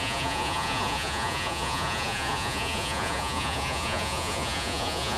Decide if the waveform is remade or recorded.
remade